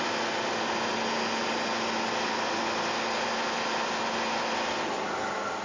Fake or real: real